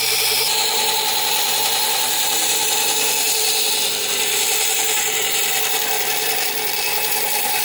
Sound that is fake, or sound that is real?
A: fake